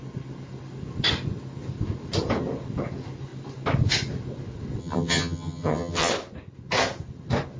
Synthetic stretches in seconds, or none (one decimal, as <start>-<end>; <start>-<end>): 4.8-6.1